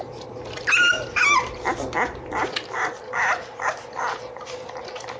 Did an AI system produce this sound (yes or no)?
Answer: no